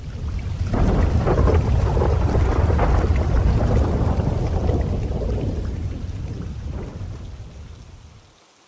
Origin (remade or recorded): recorded